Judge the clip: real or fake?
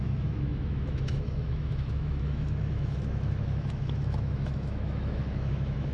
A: fake